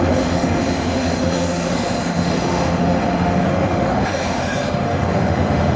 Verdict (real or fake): fake